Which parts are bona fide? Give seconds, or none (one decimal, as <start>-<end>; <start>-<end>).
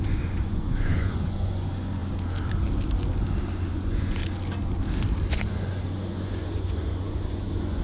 2.0-3.7; 4.2-5.3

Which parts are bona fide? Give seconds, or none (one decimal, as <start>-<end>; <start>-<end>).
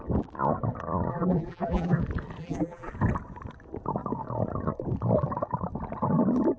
0.0-1.1; 2.0-2.4; 2.9-6.6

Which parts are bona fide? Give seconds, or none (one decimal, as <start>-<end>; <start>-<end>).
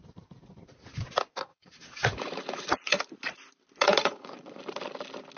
0.0-1.5; 3.0-3.8; 4.6-5.4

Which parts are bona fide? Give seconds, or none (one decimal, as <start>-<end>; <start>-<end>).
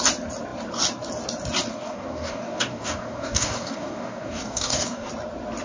0.0-1.7; 5.1-5.6